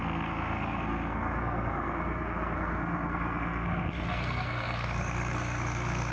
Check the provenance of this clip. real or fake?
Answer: fake